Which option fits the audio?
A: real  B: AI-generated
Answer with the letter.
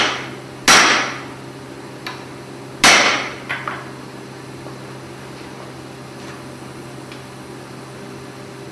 A